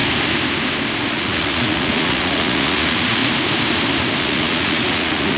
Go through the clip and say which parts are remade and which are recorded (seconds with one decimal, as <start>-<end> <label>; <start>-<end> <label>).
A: 0.0-1.0 recorded; 1.0-3.2 remade; 3.2-4.2 recorded; 4.2-5.4 remade

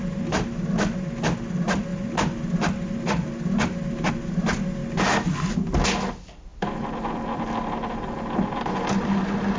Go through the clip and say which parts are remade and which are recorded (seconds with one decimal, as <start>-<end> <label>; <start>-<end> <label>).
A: 0.0-9.6 recorded

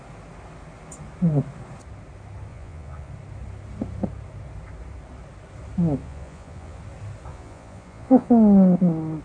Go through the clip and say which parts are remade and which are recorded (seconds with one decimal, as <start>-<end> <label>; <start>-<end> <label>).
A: 0.0-2.5 recorded; 2.5-3.1 remade; 3.1-6.0 recorded; 6.0-6.8 remade; 6.8-7.3 recorded; 7.3-8.3 remade; 8.3-9.2 recorded

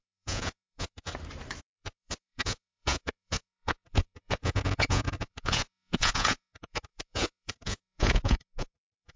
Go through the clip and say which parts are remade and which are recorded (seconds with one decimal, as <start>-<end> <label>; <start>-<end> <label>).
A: 0.0-1.1 remade; 1.1-1.6 recorded; 1.6-9.2 remade